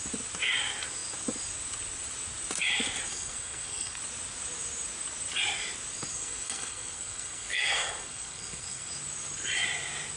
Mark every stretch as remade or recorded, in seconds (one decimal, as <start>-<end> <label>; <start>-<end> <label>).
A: 0.0-3.1 recorded; 3.1-4.0 remade; 4.0-6.1 recorded; 6.1-8.9 remade; 8.9-10.2 recorded